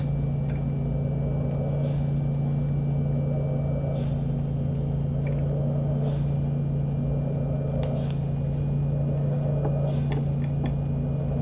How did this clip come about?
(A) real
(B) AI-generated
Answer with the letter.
A